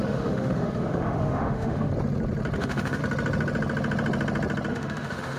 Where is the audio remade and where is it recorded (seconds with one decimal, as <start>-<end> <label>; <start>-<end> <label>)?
0.0-1.9 remade; 1.9-2.6 recorded; 2.6-3.0 remade; 3.0-4.7 recorded; 4.7-5.4 remade